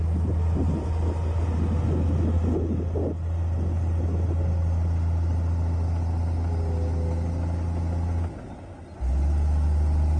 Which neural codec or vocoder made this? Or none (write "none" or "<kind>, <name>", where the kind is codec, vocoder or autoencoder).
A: none